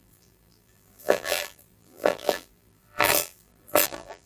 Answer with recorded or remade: remade